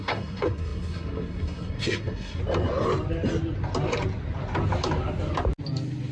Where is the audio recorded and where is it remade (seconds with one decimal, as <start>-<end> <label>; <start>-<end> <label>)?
0.0-2.4 remade; 2.4-6.1 recorded